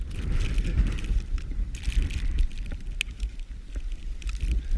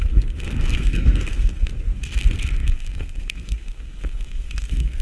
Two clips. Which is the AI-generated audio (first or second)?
second